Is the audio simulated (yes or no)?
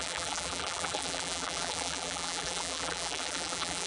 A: yes